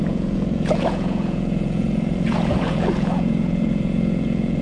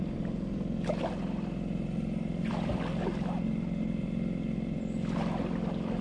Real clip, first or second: second